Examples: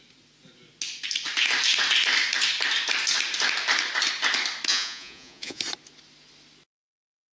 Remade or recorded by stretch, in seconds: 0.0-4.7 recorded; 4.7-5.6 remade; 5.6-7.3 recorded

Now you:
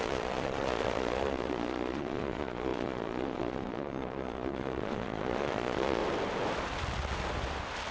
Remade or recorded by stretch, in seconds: 0.0-6.0 remade; 6.0-7.9 recorded

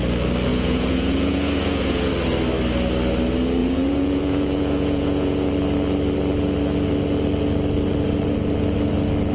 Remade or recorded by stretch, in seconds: 0.0-0.5 recorded; 0.5-2.1 remade; 2.1-3.6 recorded; 3.6-5.5 remade; 5.5-9.3 recorded

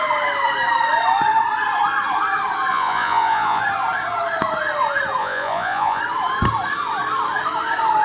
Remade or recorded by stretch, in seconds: 0.0-2.7 recorded; 2.7-3.6 remade; 3.6-5.2 recorded; 5.2-6.0 remade; 6.0-8.0 recorded

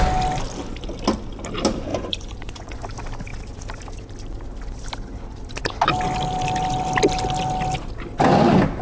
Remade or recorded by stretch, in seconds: 0.0-1.9 recorded; 1.9-2.8 remade; 2.8-8.8 recorded

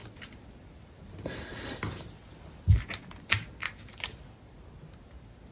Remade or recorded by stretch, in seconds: 0.0-5.5 recorded